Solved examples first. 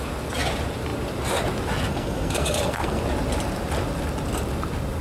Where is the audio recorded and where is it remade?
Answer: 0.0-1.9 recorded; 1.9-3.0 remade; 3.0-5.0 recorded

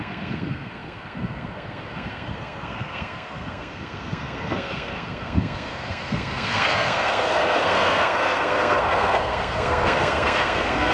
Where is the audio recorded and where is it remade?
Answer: 0.0-10.9 remade